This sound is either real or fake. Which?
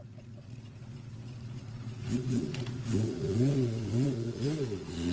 fake